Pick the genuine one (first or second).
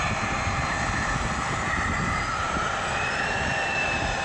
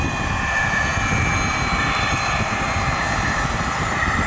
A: second